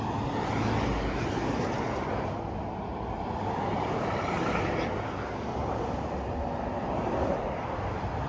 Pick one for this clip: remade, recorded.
recorded